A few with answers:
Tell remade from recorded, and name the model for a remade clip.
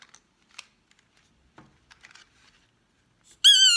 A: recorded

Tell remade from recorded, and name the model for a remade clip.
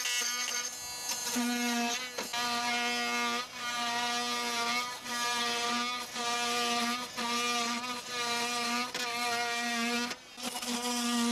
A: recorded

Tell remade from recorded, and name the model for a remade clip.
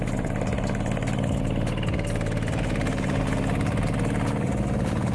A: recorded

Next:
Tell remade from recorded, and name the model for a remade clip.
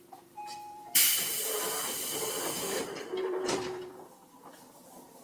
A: remade, vocoder, BigVGAN v2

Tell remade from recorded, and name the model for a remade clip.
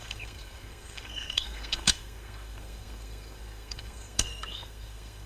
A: remade, codec, SNAC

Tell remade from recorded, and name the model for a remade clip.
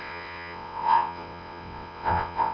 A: remade, vocoder, WaveNeXt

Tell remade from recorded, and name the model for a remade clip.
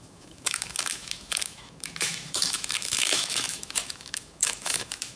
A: remade, autoencoder, DAC-VAE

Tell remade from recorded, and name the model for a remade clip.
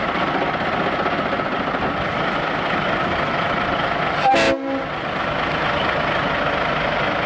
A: recorded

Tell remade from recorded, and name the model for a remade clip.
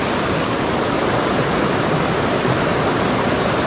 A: remade, vocoder, BigVGAN v2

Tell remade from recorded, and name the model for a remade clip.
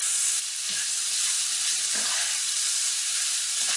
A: remade, vocoder, BigVGAN v2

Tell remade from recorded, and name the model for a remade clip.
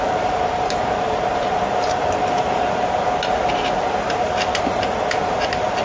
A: remade, vocoder, BigVGAN v2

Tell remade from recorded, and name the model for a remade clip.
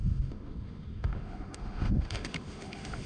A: remade, autoencoder, DAC-VAE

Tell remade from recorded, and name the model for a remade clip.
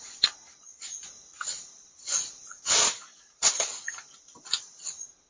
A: recorded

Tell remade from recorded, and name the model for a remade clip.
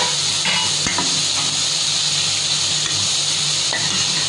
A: recorded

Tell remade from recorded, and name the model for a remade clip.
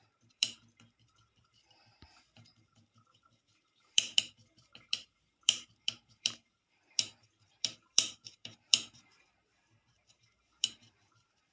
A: remade, vocoder, BigVGAN v2